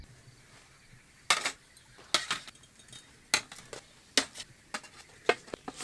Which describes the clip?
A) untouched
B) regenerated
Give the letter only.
A